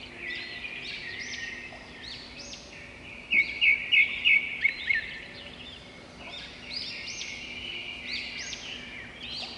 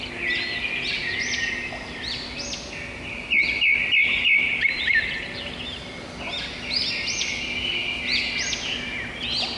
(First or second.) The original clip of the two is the second